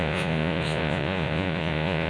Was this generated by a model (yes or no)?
yes